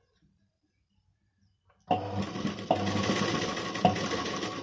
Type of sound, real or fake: real